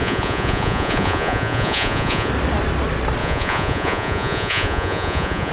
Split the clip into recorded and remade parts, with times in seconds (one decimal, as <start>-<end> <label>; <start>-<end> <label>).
0.0-2.3 remade; 2.3-3.2 recorded; 3.2-5.5 remade